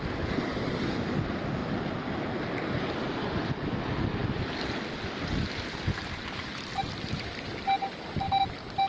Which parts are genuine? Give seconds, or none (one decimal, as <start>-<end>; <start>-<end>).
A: 0.0-1.6; 2.8-4.2; 7.1-8.9